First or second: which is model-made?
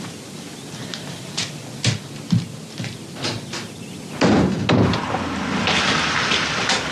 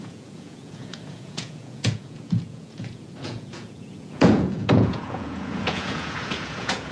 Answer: second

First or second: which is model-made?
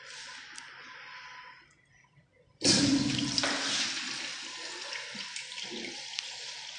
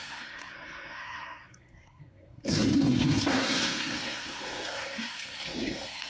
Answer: second